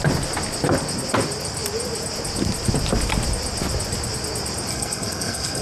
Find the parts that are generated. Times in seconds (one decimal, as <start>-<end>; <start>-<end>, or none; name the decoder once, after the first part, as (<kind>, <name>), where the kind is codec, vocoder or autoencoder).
4.7-5.6 (codec, SNAC)